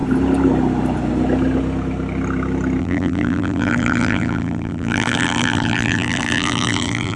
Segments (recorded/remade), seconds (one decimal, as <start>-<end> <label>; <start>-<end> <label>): 0.0-2.8 recorded; 2.8-7.2 remade